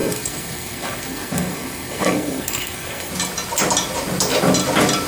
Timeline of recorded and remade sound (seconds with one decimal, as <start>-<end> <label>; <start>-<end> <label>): 0.0-3.1 remade; 3.1-5.1 recorded